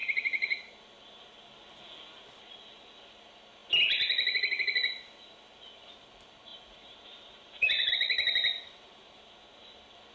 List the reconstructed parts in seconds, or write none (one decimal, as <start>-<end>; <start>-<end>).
0.0-0.7; 6.5-7.9

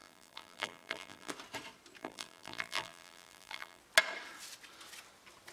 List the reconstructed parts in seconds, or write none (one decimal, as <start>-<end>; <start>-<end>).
0.0-1.3; 2.0-3.8